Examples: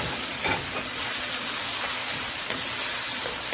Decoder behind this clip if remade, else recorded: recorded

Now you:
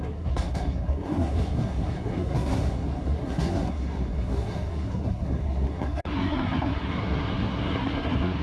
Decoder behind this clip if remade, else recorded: remade, codec, SNAC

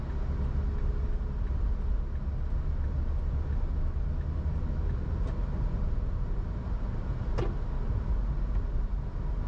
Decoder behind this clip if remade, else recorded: recorded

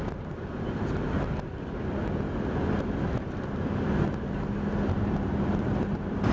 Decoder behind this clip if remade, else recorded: recorded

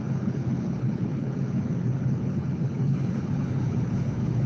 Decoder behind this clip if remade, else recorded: remade, codec, HILCodec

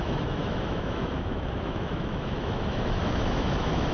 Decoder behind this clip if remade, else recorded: remade, autoencoder, DAC-VAE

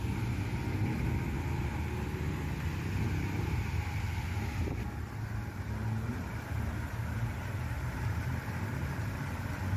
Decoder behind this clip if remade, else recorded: recorded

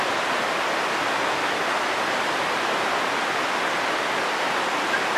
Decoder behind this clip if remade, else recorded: recorded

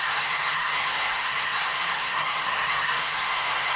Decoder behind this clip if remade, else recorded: remade, codec, SNAC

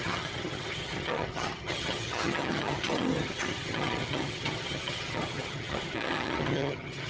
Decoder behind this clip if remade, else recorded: remade, vocoder, HiFi-GAN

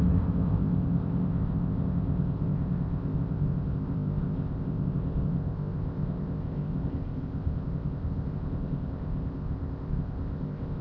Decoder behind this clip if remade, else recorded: remade, codec, ZipCodec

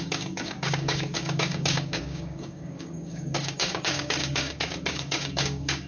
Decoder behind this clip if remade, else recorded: remade, codec, DAC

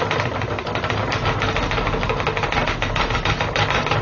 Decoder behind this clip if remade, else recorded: recorded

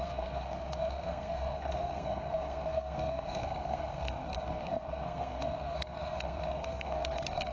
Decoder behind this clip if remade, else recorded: remade, codec, SNAC